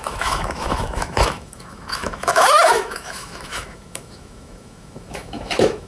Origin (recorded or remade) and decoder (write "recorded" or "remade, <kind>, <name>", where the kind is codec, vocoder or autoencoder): remade, autoencoder, DAC-VAE